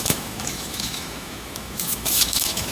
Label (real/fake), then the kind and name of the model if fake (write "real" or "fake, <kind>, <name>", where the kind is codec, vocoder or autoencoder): fake, autoencoder, DAC-VAE